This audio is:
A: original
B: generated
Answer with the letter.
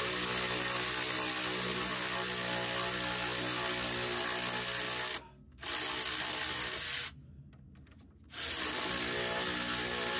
A